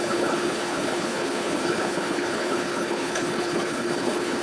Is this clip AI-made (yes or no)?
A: yes